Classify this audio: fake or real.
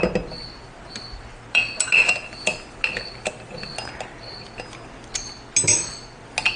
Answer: real